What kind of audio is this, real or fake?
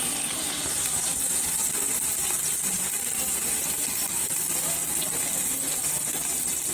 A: real